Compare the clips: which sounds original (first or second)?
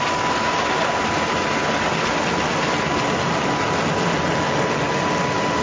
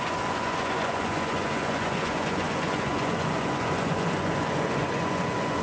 first